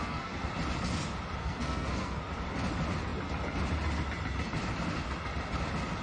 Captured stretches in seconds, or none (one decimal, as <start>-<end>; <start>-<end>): 0.5-1.4; 2.2-6.0